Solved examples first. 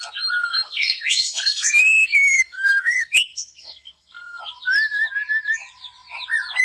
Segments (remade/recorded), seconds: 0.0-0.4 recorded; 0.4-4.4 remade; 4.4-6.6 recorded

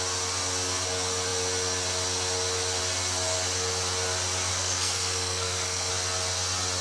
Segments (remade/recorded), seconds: 0.0-4.5 recorded; 4.5-5.9 remade; 5.9-6.8 recorded

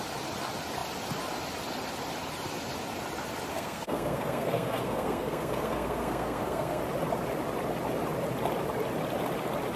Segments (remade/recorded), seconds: 0.0-3.5 recorded; 3.5-6.8 remade; 6.8-9.8 recorded

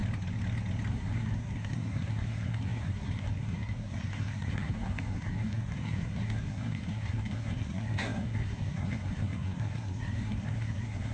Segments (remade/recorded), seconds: 0.0-0.9 recorded; 0.9-11.1 remade

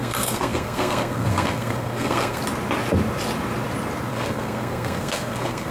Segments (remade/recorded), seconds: 0.0-2.4 remade; 2.4-4.1 recorded; 4.1-5.7 remade